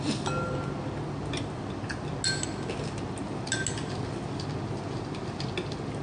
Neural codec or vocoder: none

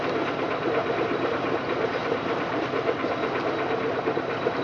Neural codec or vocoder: none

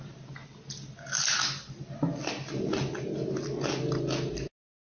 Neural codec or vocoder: none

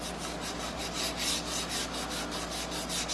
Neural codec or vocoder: none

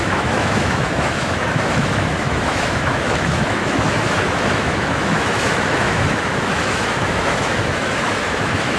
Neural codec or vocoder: autoencoder, DAC-VAE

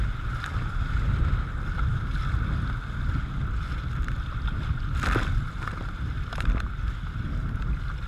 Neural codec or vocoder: none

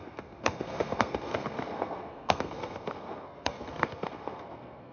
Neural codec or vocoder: codec, SNAC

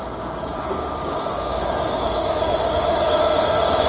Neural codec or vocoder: codec, DAC